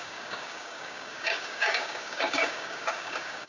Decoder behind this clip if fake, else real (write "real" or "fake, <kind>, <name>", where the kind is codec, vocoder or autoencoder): fake, codec, DAC